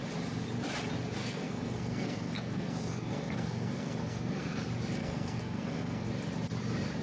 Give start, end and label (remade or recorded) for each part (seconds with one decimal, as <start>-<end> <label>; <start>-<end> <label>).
0.0-1.2 recorded; 1.2-4.6 remade; 4.6-5.0 recorded; 5.0-6.1 remade; 6.1-7.0 recorded

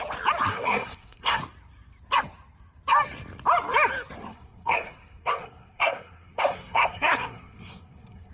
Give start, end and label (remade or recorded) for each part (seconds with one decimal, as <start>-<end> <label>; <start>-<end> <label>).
0.0-0.5 recorded; 0.5-1.4 remade; 1.4-4.3 recorded; 4.3-8.3 remade

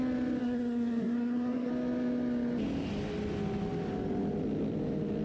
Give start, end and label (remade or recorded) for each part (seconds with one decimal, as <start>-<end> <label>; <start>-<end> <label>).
0.0-0.4 recorded; 0.4-1.7 remade; 1.7-5.2 recorded

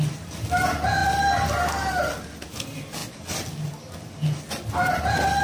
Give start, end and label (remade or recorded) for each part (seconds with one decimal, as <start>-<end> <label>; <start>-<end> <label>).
0.0-5.4 recorded

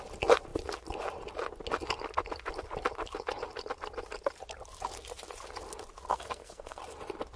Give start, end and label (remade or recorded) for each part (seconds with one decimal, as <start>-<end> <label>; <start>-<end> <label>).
0.0-6.1 recorded; 6.1-6.8 remade; 6.8-7.4 recorded

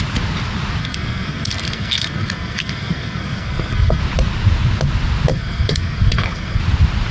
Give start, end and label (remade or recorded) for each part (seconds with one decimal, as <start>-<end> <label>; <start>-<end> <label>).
0.0-0.8 recorded; 0.8-4.0 remade; 4.0-5.3 recorded; 5.3-6.6 remade; 6.6-7.1 recorded

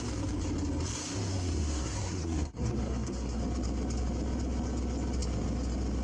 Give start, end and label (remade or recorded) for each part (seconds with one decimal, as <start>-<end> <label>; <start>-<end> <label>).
0.0-1.3 recorded; 1.3-3.4 remade; 3.4-6.0 recorded